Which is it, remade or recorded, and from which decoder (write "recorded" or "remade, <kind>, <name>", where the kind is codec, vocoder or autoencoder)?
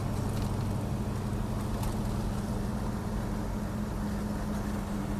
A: recorded